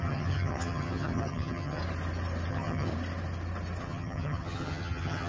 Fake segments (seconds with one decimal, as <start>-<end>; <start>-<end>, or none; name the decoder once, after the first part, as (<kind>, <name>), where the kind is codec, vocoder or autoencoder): 0.0-1.8 (vocoder, HiFi-GAN); 2.5-2.9; 3.8-5.3